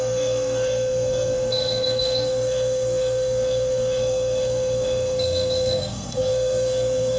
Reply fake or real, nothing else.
fake